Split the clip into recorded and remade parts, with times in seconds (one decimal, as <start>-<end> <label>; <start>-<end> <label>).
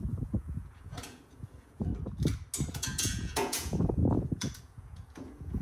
0.0-1.9 remade; 1.9-2.7 recorded; 2.7-5.6 remade